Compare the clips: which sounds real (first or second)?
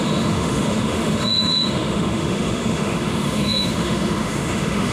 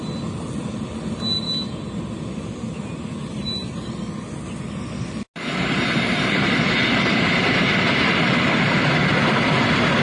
second